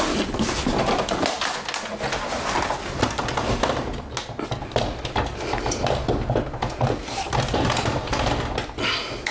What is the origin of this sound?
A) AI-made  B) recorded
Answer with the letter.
B